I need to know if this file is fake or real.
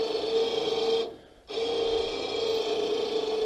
real